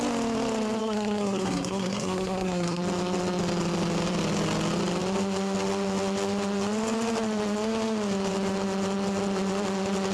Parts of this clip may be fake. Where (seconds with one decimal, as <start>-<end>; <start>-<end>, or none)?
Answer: 0.8-2.8